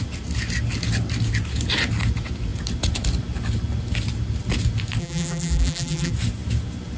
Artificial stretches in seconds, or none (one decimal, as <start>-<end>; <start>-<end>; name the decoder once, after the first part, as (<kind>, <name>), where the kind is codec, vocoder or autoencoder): 5.0-6.1 (vocoder, BigVGAN v2)